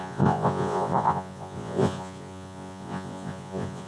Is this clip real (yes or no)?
no